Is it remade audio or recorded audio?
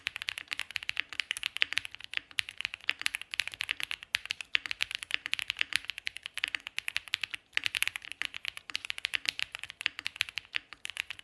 recorded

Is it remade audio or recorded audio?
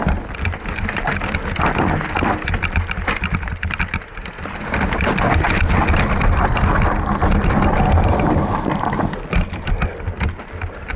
recorded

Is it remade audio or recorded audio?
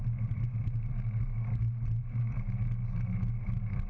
recorded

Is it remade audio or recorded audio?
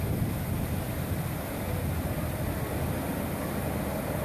recorded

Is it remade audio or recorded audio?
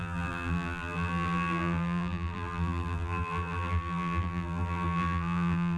remade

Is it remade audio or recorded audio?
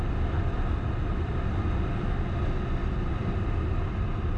recorded